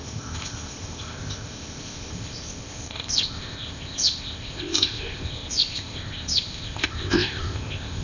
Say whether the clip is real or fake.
fake